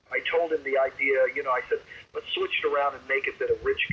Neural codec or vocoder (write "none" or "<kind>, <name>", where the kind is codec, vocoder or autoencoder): none